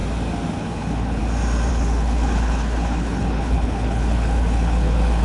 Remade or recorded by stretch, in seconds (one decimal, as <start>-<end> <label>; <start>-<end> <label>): 0.0-0.6 recorded; 0.6-1.2 remade; 1.2-1.7 recorded; 1.7-5.2 remade